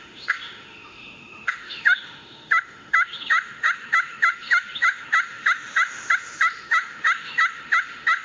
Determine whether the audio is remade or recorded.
remade